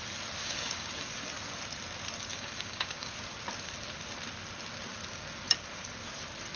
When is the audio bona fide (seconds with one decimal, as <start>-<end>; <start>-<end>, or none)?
0.0-0.4; 0.9-2.3; 3.1-6.6